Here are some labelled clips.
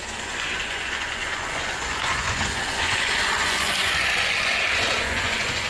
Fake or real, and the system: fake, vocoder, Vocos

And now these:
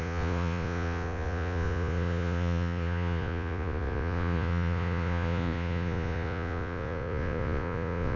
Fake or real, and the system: fake, vocoder, Vocos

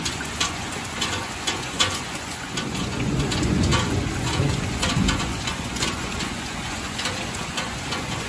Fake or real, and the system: fake, vocoder, Vocos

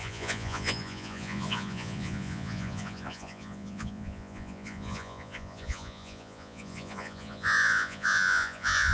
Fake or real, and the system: fake, vocoder, Vocos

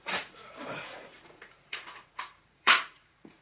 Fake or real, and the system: fake, vocoder, Vocos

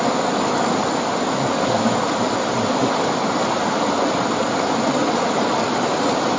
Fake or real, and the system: real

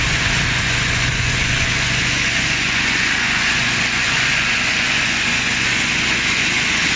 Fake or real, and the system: fake, vocoder, Vocos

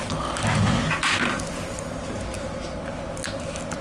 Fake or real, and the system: real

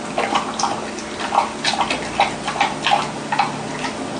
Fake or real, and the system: real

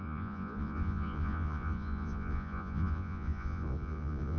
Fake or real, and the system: fake, vocoder, Vocos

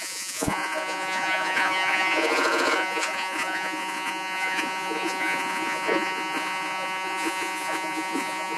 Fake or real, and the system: fake, vocoder, Vocos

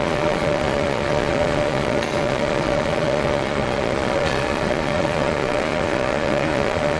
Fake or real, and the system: fake, vocoder, Vocos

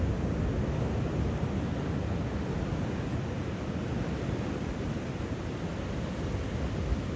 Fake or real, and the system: real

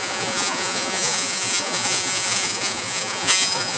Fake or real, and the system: fake, vocoder, Vocos